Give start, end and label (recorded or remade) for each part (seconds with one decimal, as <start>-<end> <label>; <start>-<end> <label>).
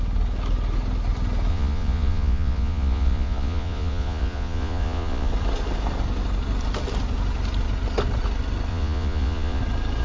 0.0-1.5 recorded; 1.5-5.3 remade; 5.3-8.7 recorded; 8.7-9.6 remade; 9.6-10.0 recorded